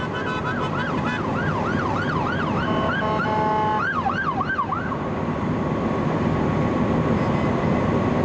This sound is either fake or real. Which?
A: real